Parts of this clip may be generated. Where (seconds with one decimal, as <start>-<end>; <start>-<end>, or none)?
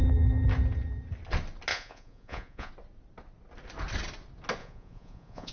1.7-2.7; 4.6-5.5